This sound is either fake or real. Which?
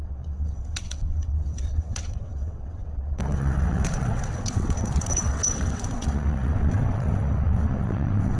fake